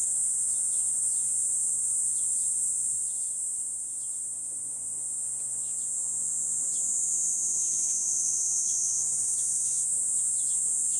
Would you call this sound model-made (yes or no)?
yes